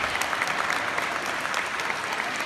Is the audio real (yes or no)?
yes